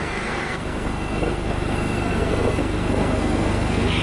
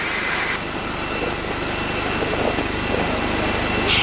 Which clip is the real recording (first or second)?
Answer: second